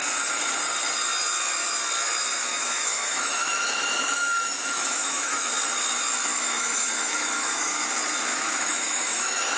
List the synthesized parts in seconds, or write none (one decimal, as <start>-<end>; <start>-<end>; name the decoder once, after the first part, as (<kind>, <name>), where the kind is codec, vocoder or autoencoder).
2.5-5.5 (autoencoder, DAC-VAE); 6.3-7.8; 8.3-9.6